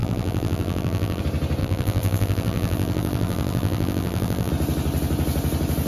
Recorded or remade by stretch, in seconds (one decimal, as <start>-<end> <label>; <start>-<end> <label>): 0.0-1.2 remade; 1.2-1.6 recorded; 1.6-4.5 remade; 4.5-5.9 recorded